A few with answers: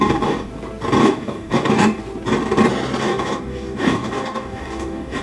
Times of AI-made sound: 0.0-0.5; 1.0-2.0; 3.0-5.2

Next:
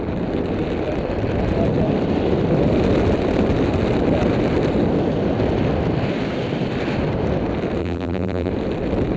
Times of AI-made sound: 7.8-8.5